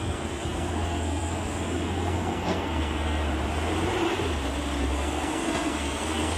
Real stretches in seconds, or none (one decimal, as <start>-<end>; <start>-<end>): 3.3-4.8